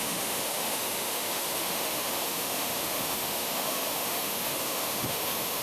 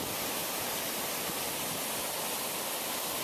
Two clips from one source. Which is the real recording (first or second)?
second